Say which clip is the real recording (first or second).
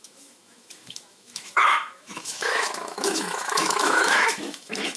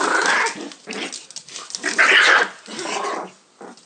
second